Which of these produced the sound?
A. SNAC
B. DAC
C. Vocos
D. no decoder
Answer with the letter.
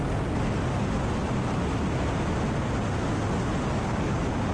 D